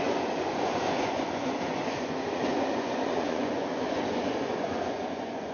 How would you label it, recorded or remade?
remade